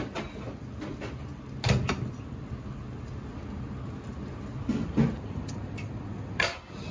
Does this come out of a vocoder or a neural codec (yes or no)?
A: no